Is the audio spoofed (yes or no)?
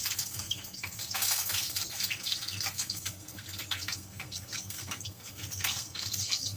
yes